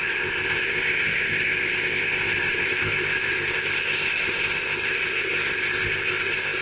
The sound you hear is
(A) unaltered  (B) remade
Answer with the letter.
B